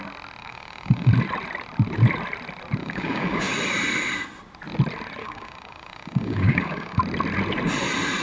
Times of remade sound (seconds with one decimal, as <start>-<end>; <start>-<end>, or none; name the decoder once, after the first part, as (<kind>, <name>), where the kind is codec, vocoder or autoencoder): 0.4-1.1 (codec, DAC); 2.8-3.5; 5.2-7.0